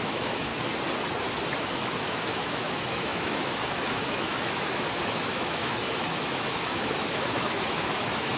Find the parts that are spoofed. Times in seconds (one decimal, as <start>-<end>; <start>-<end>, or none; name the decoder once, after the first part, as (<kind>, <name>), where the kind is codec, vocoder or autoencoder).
0.0-0.5 (autoencoder, DAC-VAE); 1.7-8.4